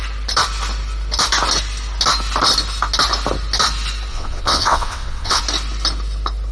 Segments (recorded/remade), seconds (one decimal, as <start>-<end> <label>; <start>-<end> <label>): 0.0-4.1 recorded; 4.1-5.4 remade; 5.4-6.5 recorded